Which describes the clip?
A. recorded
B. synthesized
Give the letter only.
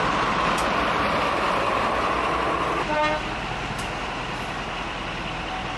A